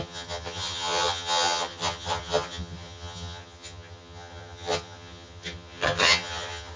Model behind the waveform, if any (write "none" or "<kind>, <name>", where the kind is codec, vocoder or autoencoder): vocoder, HiFi-GAN